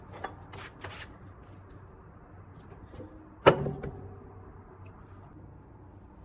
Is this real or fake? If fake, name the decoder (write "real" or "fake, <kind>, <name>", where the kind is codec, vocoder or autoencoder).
real